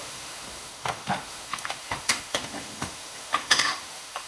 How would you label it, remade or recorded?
remade